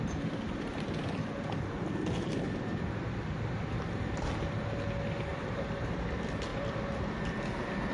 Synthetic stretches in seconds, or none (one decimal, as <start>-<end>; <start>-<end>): 5.3-6.1; 6.5-7.1